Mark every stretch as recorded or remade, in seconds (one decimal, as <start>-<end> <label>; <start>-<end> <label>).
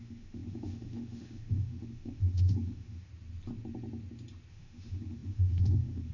0.0-3.1 remade; 3.1-4.5 recorded; 4.5-6.1 remade